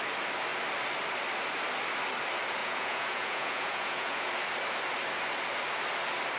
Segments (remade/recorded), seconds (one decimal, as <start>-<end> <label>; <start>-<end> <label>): 0.0-2.6 recorded; 2.6-4.3 remade; 4.3-6.4 recorded